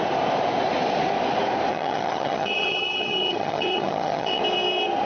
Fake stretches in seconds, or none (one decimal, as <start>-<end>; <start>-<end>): 1.7-4.4